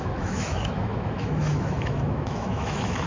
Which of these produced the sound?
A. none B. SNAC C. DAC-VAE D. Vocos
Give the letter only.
C